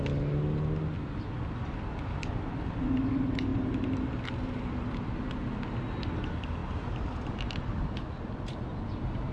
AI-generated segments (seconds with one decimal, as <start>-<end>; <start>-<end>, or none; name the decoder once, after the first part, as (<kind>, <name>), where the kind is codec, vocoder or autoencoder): 3.5-5.2 (vocoder, BigVGAN v2); 6.6-7.3